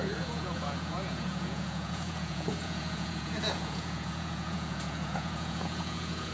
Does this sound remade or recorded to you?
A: remade